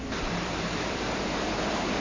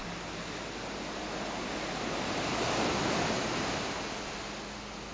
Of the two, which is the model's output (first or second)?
first